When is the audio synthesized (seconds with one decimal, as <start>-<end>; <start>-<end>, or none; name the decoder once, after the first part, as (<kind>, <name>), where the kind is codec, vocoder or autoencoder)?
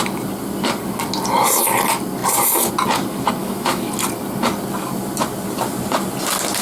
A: 3.4-3.9 (autoencoder, DAC-VAE)